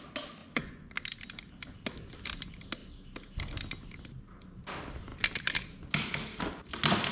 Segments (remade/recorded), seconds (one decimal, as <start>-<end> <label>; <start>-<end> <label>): 0.0-0.4 recorded; 0.4-0.9 remade; 0.9-7.1 recorded